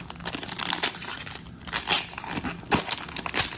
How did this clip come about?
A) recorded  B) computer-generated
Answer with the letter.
A